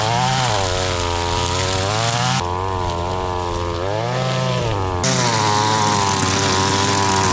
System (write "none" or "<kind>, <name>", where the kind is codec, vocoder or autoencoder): none